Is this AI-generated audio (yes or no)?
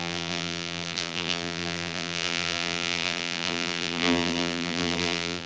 yes